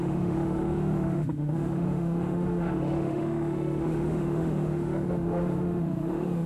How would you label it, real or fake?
fake